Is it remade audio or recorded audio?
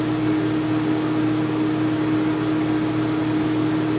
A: recorded